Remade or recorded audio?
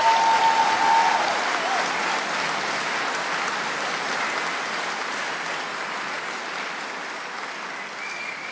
recorded